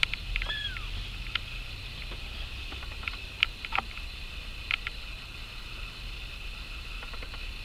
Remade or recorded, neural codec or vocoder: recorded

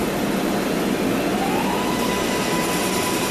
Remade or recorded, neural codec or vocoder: recorded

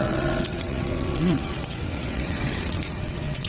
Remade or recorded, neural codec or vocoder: remade, vocoder, WaveNeXt